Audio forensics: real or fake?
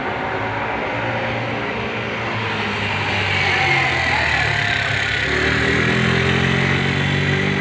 real